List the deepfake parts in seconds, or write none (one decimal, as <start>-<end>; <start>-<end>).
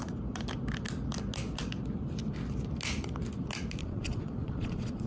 3.8-5.1